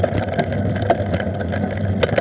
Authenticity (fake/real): real